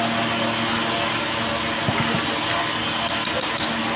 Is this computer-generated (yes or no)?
no